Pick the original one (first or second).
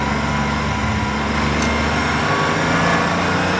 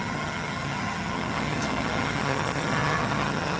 first